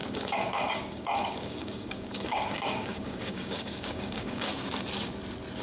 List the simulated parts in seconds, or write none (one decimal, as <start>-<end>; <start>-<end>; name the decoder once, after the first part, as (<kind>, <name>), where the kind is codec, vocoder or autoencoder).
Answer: 0.0-4.5 (codec, DAC)